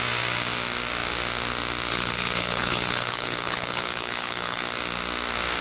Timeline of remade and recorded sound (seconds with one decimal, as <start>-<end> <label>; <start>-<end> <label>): 0.0-1.9 recorded; 1.9-4.6 remade; 4.6-5.6 recorded